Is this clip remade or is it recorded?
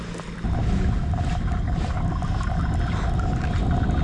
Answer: recorded